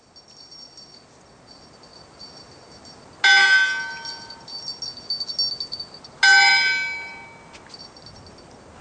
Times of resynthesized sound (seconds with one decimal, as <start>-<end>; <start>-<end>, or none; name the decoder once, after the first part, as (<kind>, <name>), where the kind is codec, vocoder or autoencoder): none